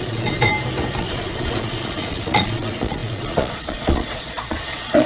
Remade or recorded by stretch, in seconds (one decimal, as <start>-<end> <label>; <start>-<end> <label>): 0.0-0.5 remade; 0.5-1.0 recorded; 1.0-5.1 remade